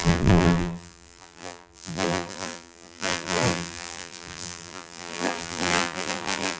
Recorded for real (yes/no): no